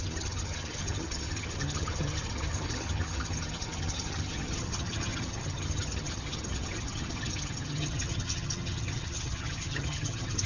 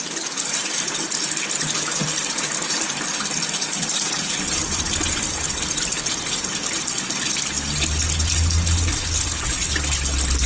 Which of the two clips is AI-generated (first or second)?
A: first